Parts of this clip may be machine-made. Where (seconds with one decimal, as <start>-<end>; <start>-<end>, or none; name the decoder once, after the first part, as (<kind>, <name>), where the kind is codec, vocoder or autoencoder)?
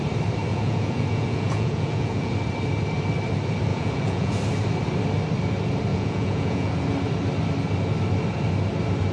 0.5-2.3 (vocoder, Vocos); 3.7-4.3; 5.9-6.7